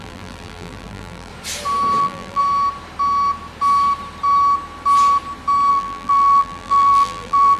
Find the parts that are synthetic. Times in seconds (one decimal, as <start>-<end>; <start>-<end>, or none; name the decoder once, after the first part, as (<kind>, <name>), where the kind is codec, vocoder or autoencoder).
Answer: 0.0-1.3 (vocoder, BigVGAN v2); 2.0-2.4; 5.7-7.6